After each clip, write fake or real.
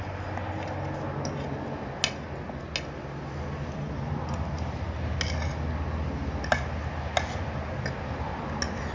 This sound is real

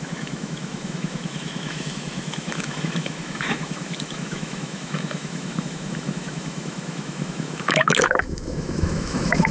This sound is fake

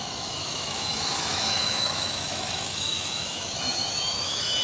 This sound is fake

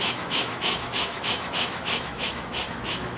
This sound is fake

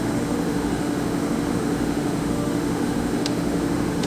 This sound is fake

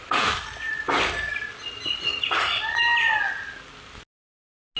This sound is real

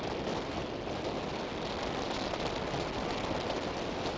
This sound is real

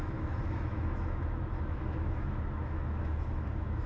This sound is fake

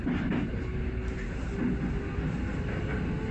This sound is real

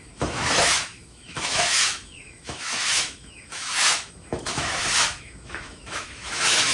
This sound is fake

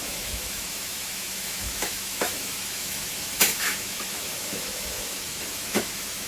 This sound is fake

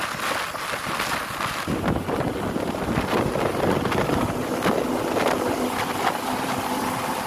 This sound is real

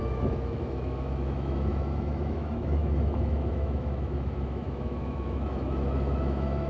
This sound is fake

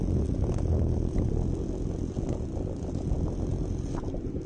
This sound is real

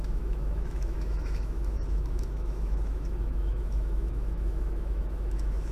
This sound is fake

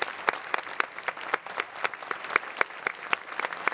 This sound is real